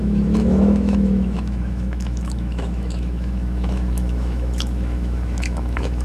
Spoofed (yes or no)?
yes